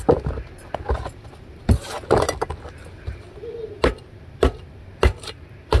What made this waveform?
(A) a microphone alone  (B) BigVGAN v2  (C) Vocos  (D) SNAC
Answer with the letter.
A